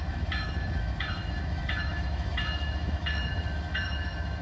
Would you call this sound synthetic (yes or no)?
yes